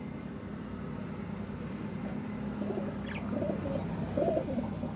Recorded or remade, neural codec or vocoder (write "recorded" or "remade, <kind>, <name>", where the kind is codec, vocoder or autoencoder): remade, vocoder, BigVGAN v2